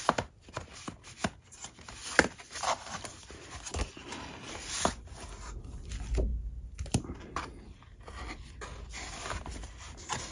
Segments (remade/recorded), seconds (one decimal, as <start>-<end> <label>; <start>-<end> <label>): 0.0-10.3 recorded